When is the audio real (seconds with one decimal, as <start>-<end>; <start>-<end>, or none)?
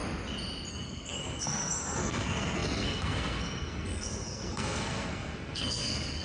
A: 0.0-0.7